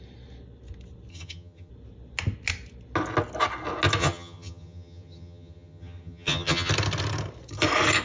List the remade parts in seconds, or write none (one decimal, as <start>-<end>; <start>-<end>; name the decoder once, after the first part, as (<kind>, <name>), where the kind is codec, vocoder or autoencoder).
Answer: 1.1-1.7 (vocoder, HiFi-GAN); 4.0-6.7